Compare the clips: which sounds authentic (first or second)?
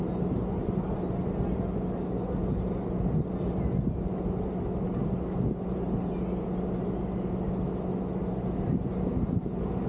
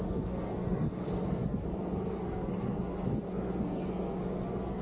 first